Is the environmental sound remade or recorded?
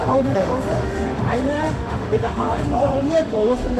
remade